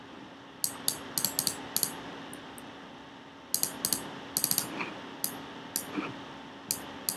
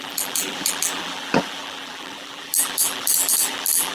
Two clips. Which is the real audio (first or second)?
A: first